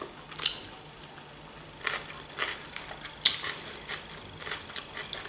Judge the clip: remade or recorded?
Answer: recorded